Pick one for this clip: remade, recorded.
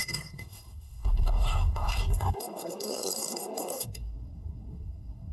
remade